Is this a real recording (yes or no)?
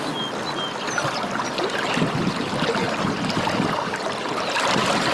yes